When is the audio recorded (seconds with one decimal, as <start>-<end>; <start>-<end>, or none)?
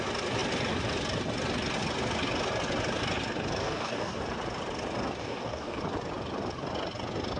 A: 0.0-3.6; 4.2-5.2; 5.8-7.4